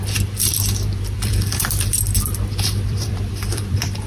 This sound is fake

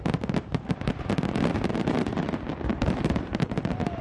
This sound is fake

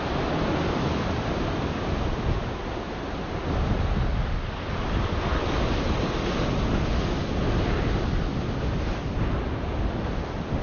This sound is real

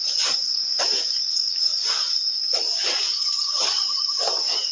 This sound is fake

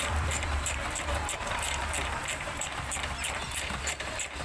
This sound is fake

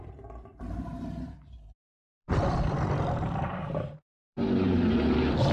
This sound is fake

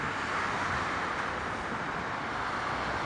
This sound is real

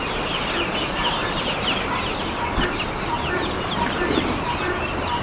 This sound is fake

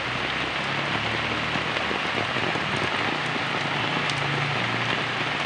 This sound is real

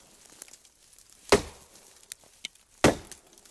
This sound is real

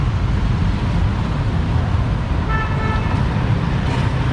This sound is real